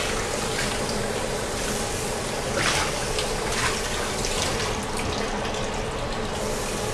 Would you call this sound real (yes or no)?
yes